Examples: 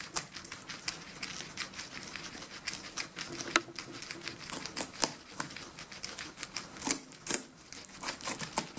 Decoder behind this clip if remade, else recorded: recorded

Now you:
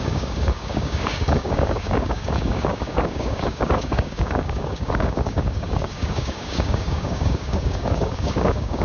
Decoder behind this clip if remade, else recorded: remade, codec, DAC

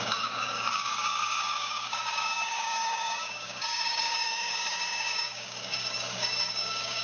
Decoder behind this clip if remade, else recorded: remade, codec, DAC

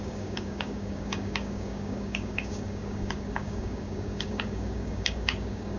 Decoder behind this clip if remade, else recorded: remade, codec, DAC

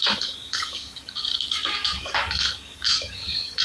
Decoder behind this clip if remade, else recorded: remade, codec, DAC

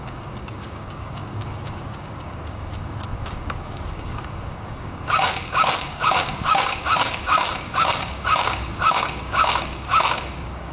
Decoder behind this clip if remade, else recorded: remade, codec, DAC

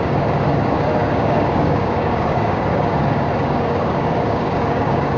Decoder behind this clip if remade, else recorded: remade, codec, DAC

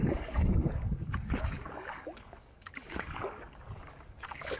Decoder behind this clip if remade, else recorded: remade, codec, DAC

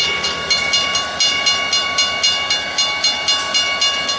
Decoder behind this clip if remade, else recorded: recorded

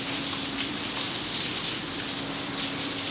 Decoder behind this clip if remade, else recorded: recorded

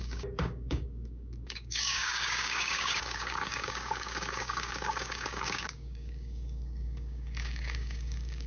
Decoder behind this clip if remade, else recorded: remade, codec, DAC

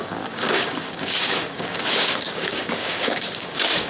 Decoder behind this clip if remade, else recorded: remade, codec, DAC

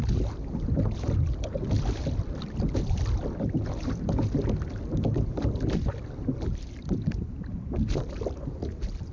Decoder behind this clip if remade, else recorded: recorded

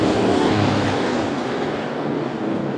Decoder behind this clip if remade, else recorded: remade, codec, DAC